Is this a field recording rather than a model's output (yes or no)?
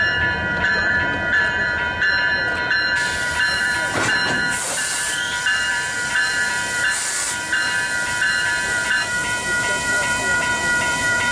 no